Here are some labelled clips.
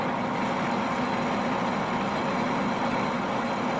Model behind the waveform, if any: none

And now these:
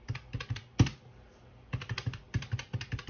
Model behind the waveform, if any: none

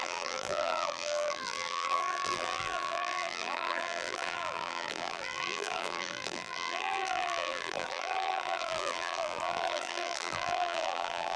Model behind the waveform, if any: vocoder, BigVGAN v2